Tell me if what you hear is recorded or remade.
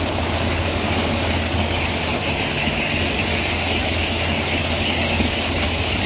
remade